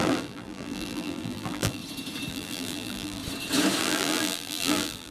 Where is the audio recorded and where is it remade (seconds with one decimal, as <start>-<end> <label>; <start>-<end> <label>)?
0.0-1.8 remade; 1.8-2.3 recorded; 2.3-3.2 remade; 3.2-3.8 recorded; 3.8-5.1 remade